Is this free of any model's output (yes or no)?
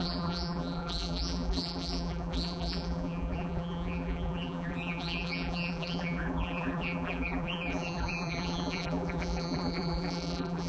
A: no